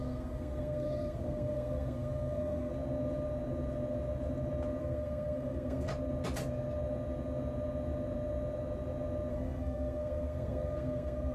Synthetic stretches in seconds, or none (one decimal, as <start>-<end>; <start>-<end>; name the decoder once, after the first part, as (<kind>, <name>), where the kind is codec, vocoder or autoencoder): 0.0-2.7 (codec, SNAC); 4.8-5.9; 9.3-11.3